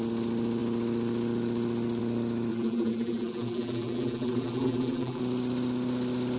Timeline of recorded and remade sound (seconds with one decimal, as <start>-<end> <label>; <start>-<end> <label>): 0.0-2.5 recorded; 2.5-5.2 remade; 5.2-6.4 recorded